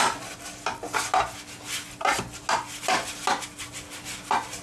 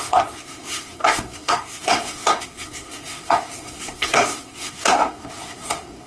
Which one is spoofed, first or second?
second